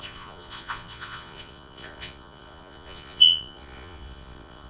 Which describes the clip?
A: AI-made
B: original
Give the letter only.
A